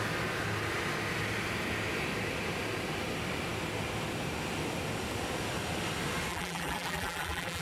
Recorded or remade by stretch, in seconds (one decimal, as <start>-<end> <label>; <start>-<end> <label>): 0.0-6.3 recorded; 6.3-7.6 remade